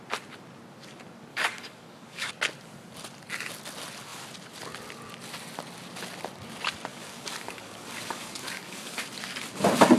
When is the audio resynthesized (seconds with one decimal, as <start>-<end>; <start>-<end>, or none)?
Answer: 1.3-2.3; 6.9-9.0